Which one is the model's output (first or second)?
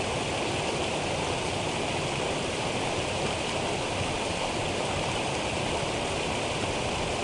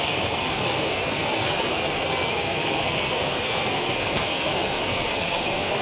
second